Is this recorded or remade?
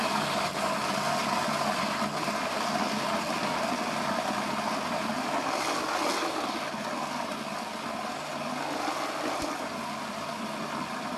recorded